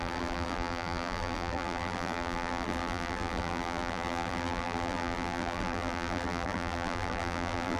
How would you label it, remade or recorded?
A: remade